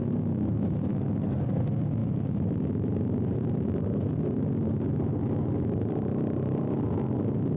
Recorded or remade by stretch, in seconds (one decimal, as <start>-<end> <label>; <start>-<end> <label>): 0.0-0.9 recorded; 0.9-1.6 remade; 1.6-7.6 recorded